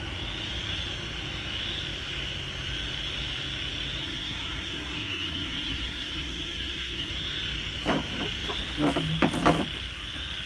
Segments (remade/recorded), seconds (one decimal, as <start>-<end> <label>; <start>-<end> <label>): 0.0-4.0 recorded; 4.0-7.1 remade; 7.1-10.5 recorded